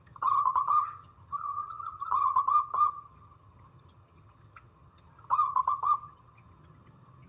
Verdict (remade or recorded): remade